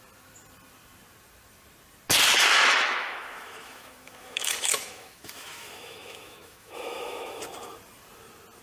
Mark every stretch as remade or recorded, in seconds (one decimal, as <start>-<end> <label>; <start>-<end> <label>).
0.0-2.5 recorded; 2.5-7.4 remade; 7.4-8.6 recorded